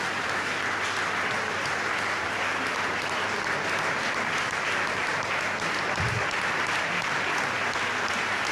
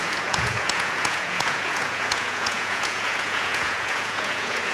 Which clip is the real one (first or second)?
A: first